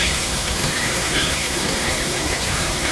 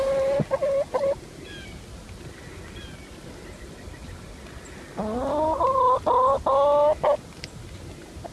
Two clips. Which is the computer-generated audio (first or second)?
first